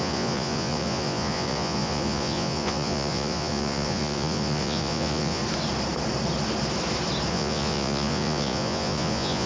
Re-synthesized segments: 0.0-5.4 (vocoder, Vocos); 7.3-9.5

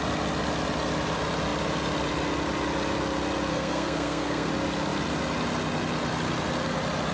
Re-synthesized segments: 3.5-4.5 (codec, SNAC)